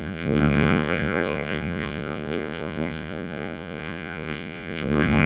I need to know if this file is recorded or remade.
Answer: remade